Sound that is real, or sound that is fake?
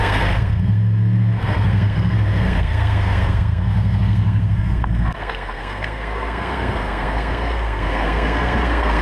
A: fake